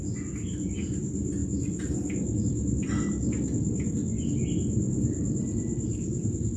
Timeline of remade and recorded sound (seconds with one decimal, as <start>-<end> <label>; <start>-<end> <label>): 0.0-6.6 recorded